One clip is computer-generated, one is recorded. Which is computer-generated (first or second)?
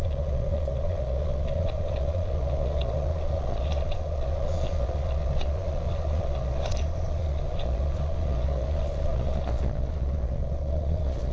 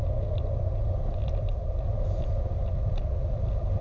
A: first